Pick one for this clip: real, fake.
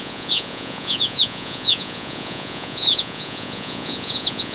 fake